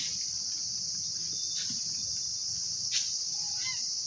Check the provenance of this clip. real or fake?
real